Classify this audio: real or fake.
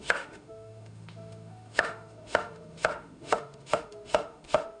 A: fake